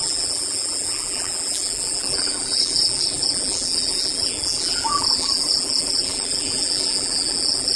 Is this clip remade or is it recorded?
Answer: remade